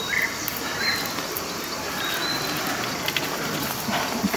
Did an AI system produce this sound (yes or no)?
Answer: no